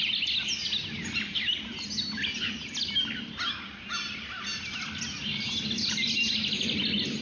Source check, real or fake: real